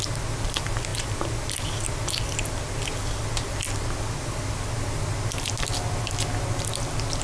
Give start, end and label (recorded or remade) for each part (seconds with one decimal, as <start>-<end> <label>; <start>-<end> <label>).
0.0-7.2 recorded